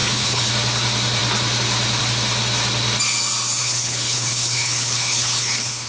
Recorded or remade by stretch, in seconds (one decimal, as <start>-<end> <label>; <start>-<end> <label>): 0.0-0.5 remade; 0.5-3.6 recorded; 3.6-5.9 remade